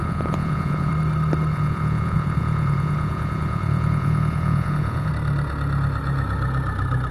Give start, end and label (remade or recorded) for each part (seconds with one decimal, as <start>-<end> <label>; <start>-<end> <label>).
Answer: 0.0-0.9 remade; 0.9-1.5 recorded; 1.5-5.1 remade; 5.1-7.1 recorded